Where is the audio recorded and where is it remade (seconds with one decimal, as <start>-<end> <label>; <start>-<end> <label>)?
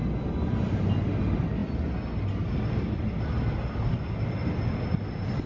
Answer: 0.0-5.5 recorded